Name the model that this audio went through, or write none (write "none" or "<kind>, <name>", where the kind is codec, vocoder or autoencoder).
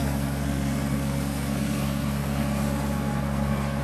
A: codec, SNAC